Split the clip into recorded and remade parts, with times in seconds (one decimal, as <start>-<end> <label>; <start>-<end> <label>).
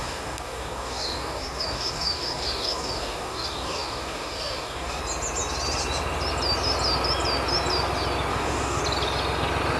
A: 0.0-5.0 remade; 5.0-8.3 recorded; 8.3-8.8 remade; 8.8-9.8 recorded